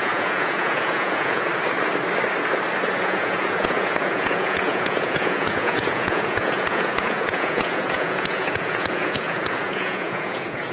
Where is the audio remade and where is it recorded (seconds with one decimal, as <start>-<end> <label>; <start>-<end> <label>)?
0.0-1.5 remade; 1.5-3.0 recorded; 3.0-10.7 remade